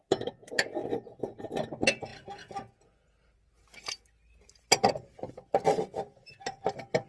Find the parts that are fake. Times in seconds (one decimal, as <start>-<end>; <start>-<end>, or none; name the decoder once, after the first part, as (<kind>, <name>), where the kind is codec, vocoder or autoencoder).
none